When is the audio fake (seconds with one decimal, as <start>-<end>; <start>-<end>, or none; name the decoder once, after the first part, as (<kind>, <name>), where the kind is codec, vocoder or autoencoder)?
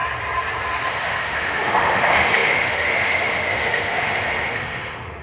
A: 0.9-5.2 (autoencoder, DAC-VAE)